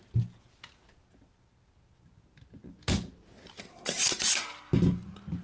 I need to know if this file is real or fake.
real